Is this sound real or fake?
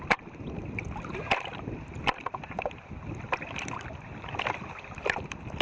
fake